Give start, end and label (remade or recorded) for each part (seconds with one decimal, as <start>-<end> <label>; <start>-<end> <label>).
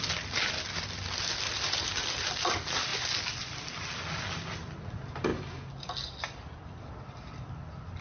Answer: 0.0-8.0 recorded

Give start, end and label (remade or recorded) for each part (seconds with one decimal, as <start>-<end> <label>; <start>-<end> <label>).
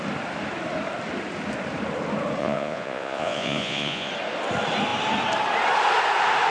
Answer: 0.0-2.4 recorded; 2.4-4.1 remade; 4.1-6.5 recorded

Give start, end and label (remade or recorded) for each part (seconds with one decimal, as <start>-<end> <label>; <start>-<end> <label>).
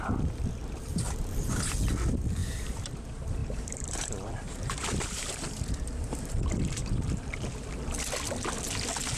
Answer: 0.0-0.6 recorded; 0.6-1.7 remade; 1.7-2.4 recorded; 2.4-2.9 remade; 2.9-3.4 recorded; 3.4-6.3 remade; 6.3-6.8 recorded; 6.8-7.5 remade; 7.5-9.2 recorded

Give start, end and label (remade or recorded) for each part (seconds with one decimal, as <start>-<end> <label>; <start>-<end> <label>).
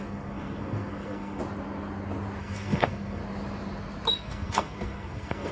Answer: 0.0-1.4 remade; 1.4-2.4 recorded; 2.4-3.2 remade; 3.2-4.1 recorded; 4.1-5.5 remade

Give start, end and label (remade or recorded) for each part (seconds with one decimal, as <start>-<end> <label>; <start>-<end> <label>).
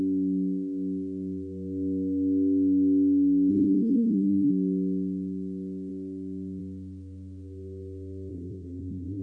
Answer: 0.0-3.5 recorded; 3.5-4.5 remade; 4.5-8.3 recorded; 8.3-9.2 remade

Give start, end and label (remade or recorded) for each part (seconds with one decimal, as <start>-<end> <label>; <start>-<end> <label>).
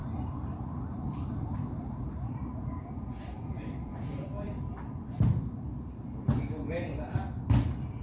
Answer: 0.0-4.6 remade; 4.6-8.0 recorded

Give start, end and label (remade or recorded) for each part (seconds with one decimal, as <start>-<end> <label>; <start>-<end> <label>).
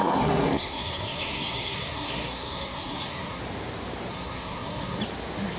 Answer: 0.0-3.4 remade; 3.4-4.1 recorded; 4.1-5.0 remade; 5.0-5.6 recorded